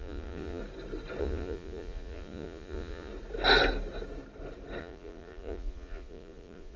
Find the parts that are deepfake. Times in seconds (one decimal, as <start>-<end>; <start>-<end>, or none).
0.0-0.6; 1.2-3.1; 4.8-6.8